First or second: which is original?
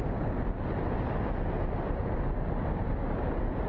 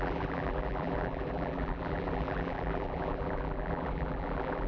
first